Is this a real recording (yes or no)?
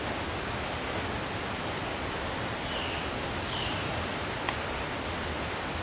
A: yes